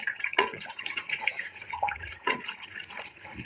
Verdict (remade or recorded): remade